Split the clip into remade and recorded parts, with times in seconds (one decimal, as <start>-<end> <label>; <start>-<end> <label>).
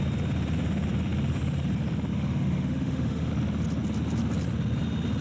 0.0-2.1 recorded; 2.1-3.3 remade; 3.3-5.2 recorded